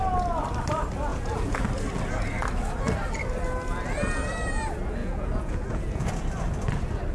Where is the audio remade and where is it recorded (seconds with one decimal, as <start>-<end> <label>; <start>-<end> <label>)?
0.0-1.1 recorded; 1.1-1.6 remade; 1.6-5.0 recorded; 5.0-6.1 remade; 6.1-7.1 recorded